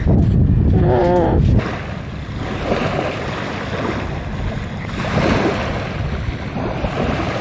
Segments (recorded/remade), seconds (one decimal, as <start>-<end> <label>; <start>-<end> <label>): 0.0-7.4 recorded

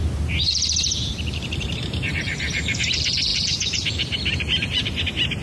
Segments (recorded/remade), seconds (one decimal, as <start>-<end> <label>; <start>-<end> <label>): 0.0-2.8 remade; 2.8-3.3 recorded; 3.3-5.0 remade; 5.0-5.4 recorded

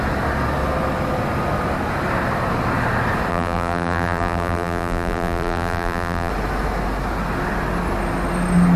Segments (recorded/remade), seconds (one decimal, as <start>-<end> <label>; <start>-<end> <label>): 0.0-3.3 recorded; 3.3-6.3 remade; 6.3-8.8 recorded